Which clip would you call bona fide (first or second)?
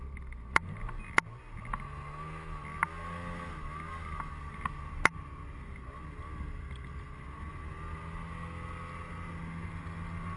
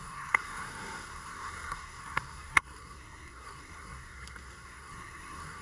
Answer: first